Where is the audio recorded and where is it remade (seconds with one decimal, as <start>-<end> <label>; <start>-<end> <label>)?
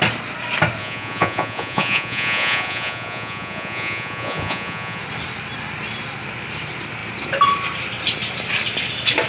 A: 0.0-0.8 recorded; 0.8-5.0 remade; 5.0-9.3 recorded